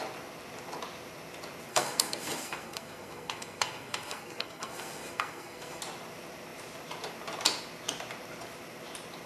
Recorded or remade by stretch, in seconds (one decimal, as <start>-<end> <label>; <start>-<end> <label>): 0.0-1.7 recorded; 1.7-5.8 remade; 5.8-9.3 recorded